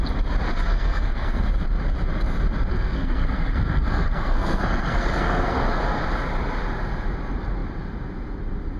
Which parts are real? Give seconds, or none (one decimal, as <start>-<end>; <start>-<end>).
0.0-0.7; 1.4-2.7; 5.8-8.8